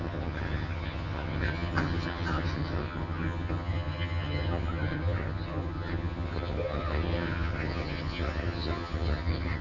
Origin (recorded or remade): remade